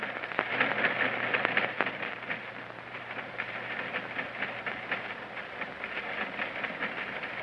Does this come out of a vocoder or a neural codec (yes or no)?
no